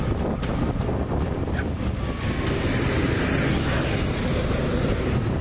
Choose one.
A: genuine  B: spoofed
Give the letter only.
A